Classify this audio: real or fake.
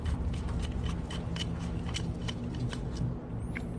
real